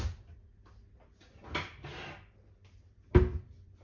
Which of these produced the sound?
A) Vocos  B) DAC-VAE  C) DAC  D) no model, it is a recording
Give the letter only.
D